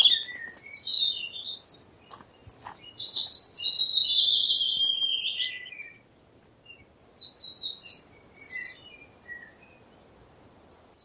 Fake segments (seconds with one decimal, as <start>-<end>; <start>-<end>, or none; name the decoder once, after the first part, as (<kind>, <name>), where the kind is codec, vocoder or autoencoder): none